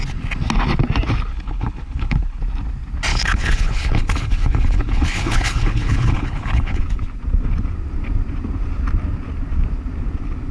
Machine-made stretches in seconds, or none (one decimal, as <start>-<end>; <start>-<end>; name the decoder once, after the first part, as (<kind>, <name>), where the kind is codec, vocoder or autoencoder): 1.3-2.4 (codec, HILCodec); 3.1-6.8